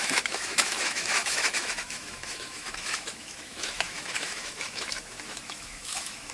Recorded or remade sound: remade